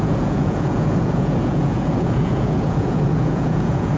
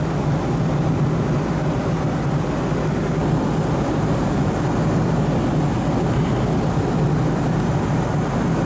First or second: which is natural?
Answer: second